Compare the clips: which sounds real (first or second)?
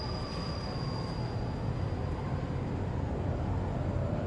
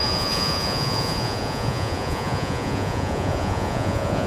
first